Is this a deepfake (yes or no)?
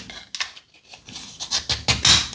no